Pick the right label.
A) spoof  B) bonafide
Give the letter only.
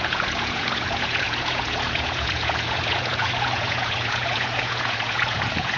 A